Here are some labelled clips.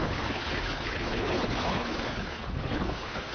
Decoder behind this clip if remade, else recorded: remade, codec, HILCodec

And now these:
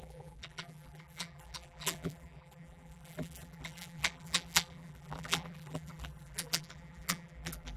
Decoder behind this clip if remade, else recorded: remade, vocoder, BigVGAN v2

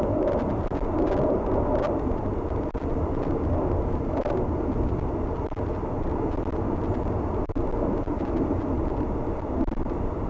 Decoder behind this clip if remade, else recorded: recorded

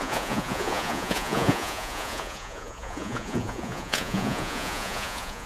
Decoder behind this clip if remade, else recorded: remade, vocoder, Vocos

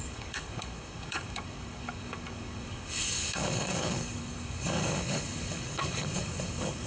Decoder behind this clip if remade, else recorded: remade, codec, DAC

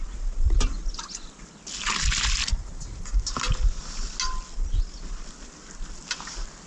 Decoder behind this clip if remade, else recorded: recorded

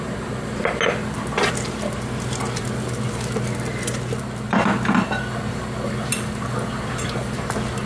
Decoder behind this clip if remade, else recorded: recorded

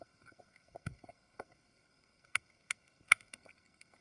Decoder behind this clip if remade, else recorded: remade, codec, SNAC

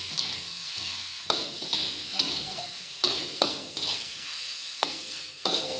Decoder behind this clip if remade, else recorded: remade, codec, SNAC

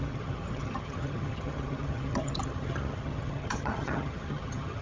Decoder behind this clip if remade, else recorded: remade, vocoder, HiFi-GAN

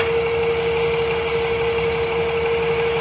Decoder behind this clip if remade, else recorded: recorded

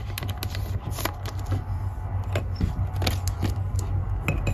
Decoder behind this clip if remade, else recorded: recorded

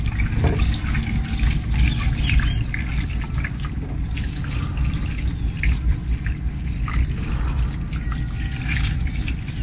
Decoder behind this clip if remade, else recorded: recorded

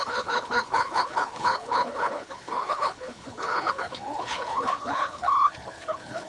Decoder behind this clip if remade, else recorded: remade, codec, HILCodec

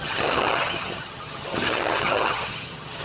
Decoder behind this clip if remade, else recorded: remade, vocoder, HiFi-GAN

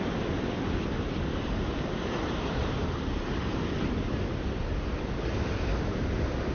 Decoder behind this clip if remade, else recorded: recorded